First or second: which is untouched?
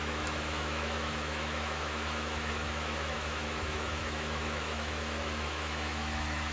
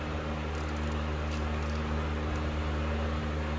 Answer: second